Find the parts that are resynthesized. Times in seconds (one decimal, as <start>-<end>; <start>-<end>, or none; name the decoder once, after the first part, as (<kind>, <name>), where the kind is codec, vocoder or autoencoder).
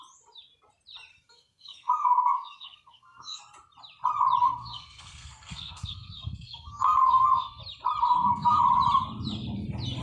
1.1-3.4 (codec, SNAC); 4.4-7.6; 8.0-8.6